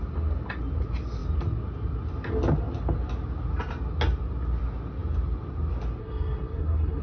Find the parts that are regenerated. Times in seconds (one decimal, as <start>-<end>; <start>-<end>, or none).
6.0-7.0